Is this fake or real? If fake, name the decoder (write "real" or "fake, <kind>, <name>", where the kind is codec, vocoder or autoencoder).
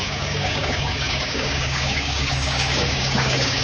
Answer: fake, codec, DAC